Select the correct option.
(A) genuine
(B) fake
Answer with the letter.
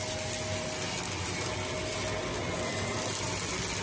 A